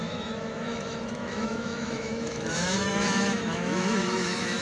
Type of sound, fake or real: fake